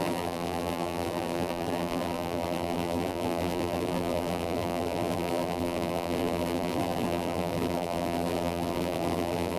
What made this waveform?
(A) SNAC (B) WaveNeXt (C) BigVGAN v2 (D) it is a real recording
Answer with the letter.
C